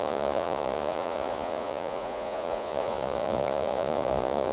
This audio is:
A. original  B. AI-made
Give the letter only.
B